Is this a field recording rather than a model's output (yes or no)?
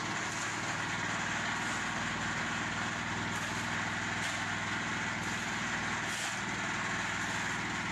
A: yes